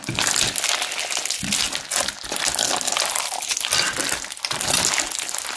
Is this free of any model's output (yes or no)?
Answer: yes